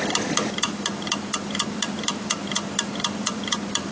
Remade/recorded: remade